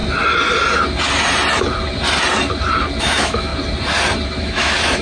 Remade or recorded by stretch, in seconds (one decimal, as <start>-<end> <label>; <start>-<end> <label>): 0.0-3.0 recorded; 3.0-3.5 remade; 3.5-4.4 recorded; 4.4-5.0 remade